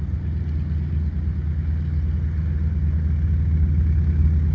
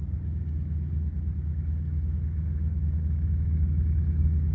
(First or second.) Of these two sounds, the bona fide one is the first